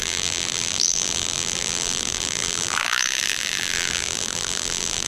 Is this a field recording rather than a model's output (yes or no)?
no